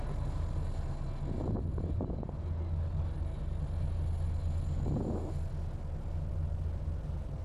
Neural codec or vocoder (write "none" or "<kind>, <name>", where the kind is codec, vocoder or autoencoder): none